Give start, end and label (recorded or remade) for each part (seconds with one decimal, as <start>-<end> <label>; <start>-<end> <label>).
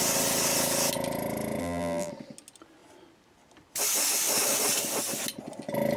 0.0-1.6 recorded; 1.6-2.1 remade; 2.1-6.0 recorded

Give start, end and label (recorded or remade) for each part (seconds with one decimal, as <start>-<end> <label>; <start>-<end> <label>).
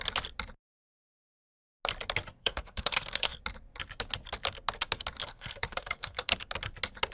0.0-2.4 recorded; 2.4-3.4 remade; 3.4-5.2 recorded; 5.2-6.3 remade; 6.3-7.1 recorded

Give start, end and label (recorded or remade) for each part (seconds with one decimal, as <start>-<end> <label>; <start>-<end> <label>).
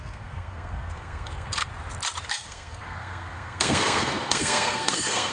0.0-1.7 remade; 1.7-2.3 recorded; 2.3-5.3 remade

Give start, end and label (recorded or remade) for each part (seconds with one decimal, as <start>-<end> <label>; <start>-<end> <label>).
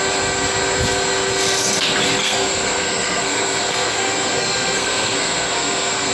0.0-2.2 recorded; 2.2-6.1 remade